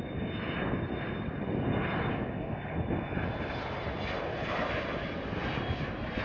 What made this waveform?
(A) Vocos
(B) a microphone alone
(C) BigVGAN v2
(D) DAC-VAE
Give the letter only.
B